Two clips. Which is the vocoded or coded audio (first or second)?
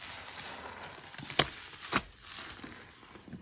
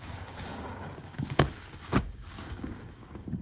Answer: second